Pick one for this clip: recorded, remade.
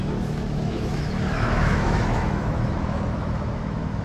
remade